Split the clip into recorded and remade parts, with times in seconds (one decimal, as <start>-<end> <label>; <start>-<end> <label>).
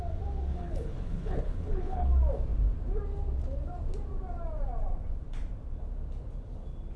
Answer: 0.0-0.5 recorded; 0.5-2.1 remade; 2.1-7.0 recorded